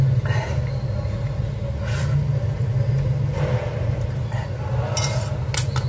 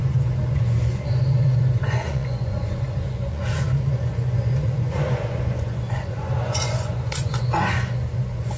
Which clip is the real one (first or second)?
first